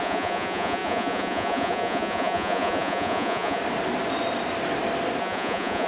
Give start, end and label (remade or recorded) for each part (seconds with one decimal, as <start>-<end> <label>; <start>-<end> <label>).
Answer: 0.0-3.6 remade; 3.6-5.2 recorded; 5.2-5.9 remade